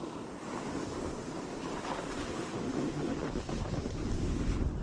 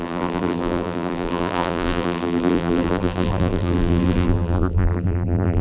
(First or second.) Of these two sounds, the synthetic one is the second